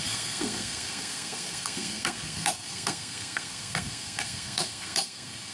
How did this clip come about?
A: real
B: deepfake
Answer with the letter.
B